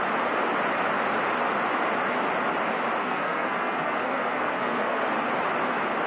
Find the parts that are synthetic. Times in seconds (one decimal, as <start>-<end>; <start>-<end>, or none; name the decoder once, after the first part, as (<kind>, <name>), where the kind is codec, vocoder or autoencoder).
3.0-5.0 (codec, SNAC)